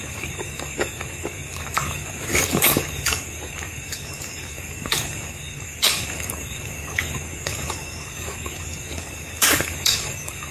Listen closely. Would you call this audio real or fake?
fake